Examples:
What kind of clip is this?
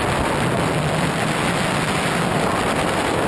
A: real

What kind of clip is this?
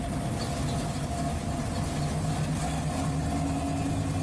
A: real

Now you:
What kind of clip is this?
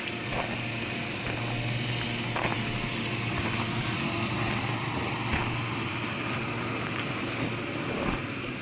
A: real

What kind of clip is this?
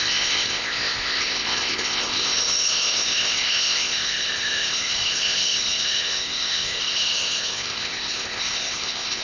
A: fake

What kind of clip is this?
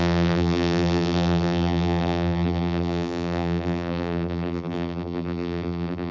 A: fake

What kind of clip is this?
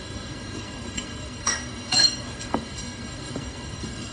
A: fake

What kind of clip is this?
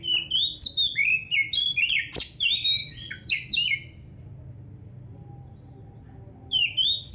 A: real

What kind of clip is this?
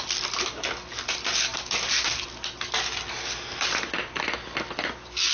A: real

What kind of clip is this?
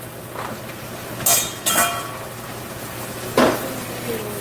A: real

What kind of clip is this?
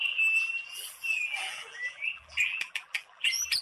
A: fake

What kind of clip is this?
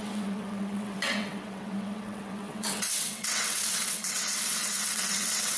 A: fake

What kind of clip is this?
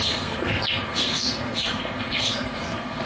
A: fake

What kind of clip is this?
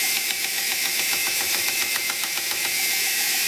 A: fake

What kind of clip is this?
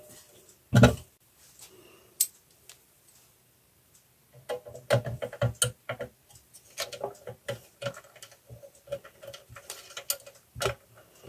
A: real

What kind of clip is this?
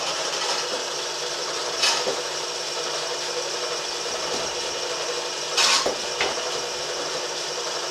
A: fake